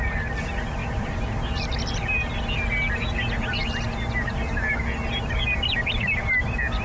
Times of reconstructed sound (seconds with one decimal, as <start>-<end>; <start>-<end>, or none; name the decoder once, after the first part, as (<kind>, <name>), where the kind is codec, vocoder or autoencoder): none

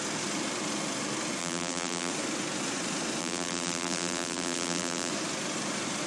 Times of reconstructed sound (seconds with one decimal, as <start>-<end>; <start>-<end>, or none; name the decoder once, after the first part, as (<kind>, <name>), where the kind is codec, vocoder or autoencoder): 1.4-2.1 (vocoder, BigVGAN v2); 3.2-5.1